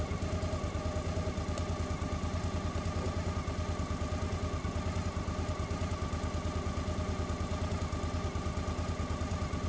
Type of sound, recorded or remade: recorded